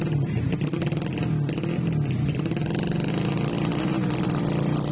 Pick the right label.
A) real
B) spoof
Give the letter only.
A